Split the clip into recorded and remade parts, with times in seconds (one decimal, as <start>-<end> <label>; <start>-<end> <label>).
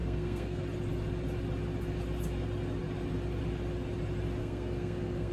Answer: 0.0-0.6 remade; 0.6-4.4 recorded; 4.4-5.3 remade